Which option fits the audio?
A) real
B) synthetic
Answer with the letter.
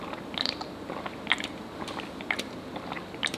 A